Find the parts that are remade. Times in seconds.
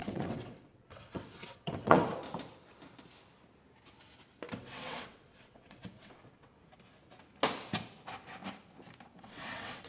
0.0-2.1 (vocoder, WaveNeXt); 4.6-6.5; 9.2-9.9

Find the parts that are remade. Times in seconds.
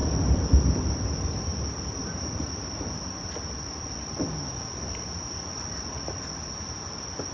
none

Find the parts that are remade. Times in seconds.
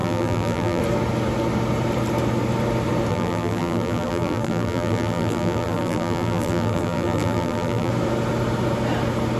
0.0-0.8 (vocoder, BigVGAN v2); 3.1-7.9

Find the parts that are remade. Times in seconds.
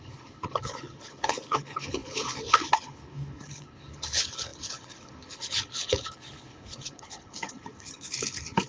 0.0-8.7 (codec, HILCodec)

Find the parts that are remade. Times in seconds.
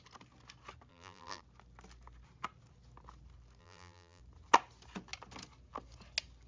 0.9-1.4 (vocoder, BigVGAN v2); 3.6-4.2